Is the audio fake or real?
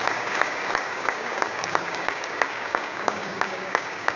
fake